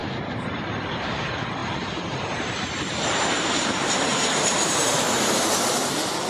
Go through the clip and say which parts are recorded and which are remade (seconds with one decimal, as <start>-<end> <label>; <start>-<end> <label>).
0.0-0.6 remade; 0.6-1.6 recorded; 1.6-5.4 remade; 5.4-6.3 recorded